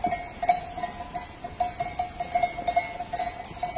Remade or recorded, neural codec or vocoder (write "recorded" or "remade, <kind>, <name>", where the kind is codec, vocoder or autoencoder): recorded